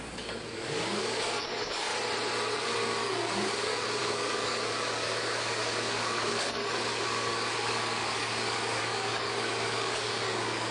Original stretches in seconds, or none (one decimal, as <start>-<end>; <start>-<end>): 1.9-2.6

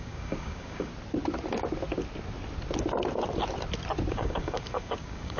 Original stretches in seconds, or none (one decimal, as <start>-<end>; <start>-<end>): 0.9-4.1

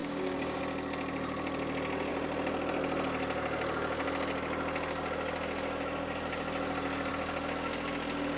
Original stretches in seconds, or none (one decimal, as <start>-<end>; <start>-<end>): 0.6-8.4

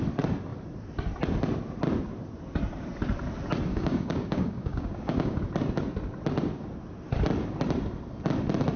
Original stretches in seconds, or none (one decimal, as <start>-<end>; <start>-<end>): 0.0-3.7; 5.4-8.8

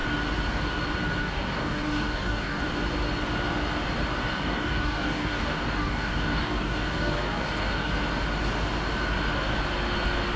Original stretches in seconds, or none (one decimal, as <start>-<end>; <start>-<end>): 0.0-1.2; 2.6-4.2; 7.9-10.4

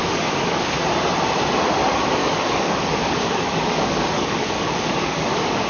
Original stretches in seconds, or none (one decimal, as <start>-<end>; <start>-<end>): 0.8-2.2

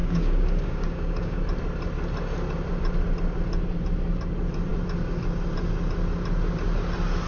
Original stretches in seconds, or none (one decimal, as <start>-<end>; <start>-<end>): 1.4-7.3